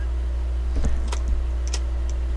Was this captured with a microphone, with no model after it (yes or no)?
yes